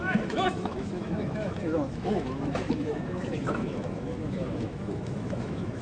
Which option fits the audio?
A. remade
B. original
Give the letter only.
A